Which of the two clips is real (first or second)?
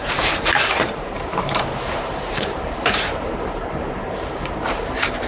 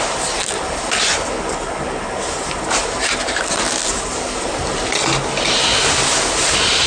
second